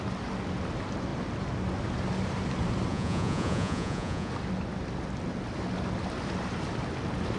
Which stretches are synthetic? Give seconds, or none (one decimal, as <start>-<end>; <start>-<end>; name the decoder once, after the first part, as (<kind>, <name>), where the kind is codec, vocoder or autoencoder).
2.9-4.3 (vocoder, Vocos)